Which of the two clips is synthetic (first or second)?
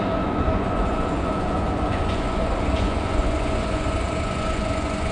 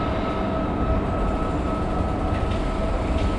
first